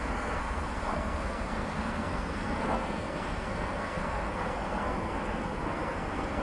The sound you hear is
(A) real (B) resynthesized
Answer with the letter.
B